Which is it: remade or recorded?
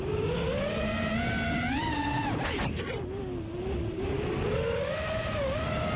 recorded